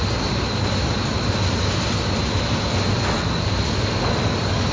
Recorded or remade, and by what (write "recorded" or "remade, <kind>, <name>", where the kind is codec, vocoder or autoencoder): recorded